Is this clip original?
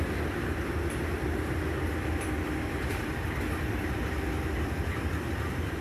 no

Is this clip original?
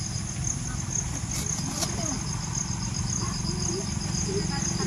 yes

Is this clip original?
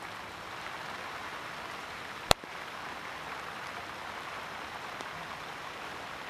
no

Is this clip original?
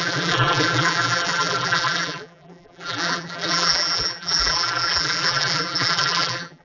no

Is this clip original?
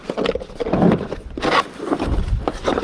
yes